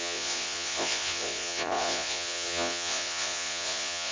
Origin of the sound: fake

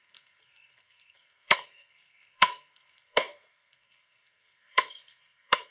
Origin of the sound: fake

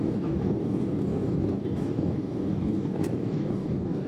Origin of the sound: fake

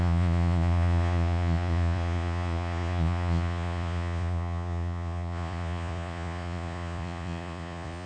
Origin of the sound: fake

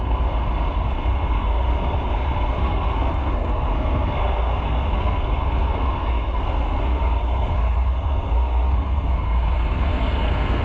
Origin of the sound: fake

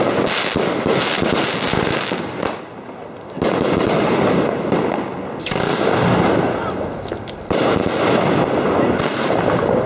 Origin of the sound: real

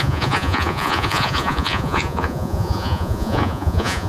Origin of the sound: fake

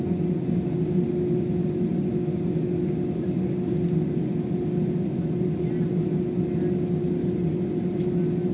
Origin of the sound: real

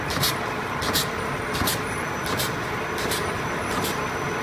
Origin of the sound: real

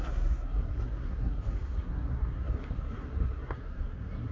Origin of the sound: fake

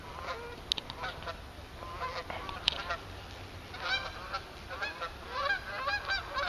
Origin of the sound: real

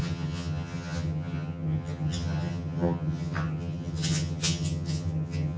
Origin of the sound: fake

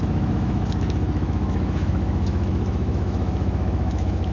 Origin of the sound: fake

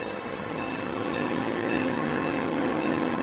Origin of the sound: fake